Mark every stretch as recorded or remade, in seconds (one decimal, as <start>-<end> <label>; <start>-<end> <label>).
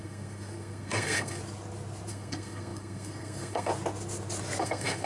0.0-1.4 remade; 1.4-2.1 recorded; 2.1-3.7 remade; 3.7-4.6 recorded; 4.6-5.1 remade